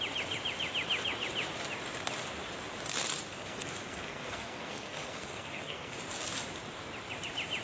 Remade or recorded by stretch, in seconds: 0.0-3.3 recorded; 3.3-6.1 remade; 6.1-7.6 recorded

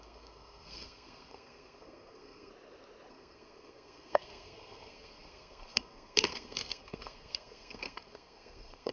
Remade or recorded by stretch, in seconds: 0.0-2.5 remade; 2.5-3.1 recorded; 3.1-8.9 remade

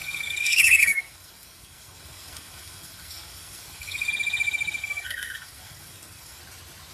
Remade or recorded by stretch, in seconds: 0.0-4.1 remade; 4.1-4.8 recorded; 4.8-6.4 remade; 6.4-6.9 recorded

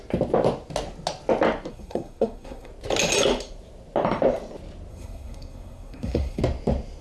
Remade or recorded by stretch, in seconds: 0.0-1.7 recorded; 1.7-2.7 remade; 2.7-4.9 recorded; 4.9-6.4 remade; 6.4-7.0 recorded

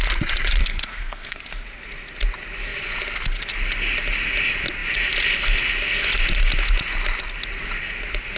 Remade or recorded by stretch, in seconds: 0.0-0.6 recorded; 0.6-1.4 remade; 1.4-8.4 recorded

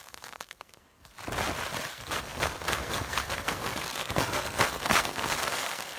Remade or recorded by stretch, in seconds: 0.0-1.1 remade; 1.1-1.9 recorded; 1.9-6.0 remade

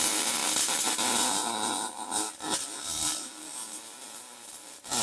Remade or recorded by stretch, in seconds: 0.0-5.0 recorded